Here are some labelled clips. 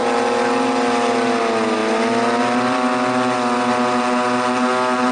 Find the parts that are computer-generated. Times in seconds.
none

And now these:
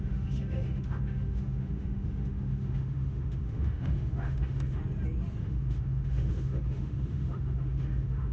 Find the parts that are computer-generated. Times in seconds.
0.0-4.8 (autoencoder, DAC-VAE); 5.4-8.3

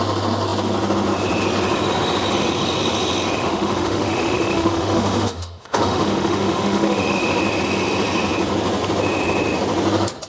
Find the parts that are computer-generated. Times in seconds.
3.4-7.4 (autoencoder, DAC-VAE)